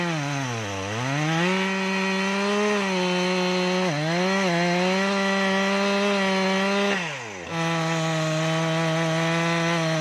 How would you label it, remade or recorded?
recorded